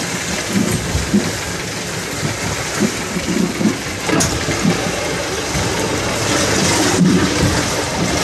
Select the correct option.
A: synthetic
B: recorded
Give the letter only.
B